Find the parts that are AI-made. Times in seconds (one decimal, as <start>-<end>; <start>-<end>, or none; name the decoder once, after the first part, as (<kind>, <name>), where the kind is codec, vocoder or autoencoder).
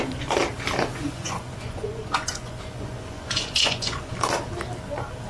0.9-4.1 (vocoder, Vocos)